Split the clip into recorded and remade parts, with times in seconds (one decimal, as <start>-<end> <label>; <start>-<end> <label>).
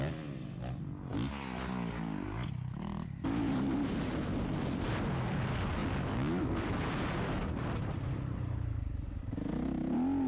0.0-10.3 recorded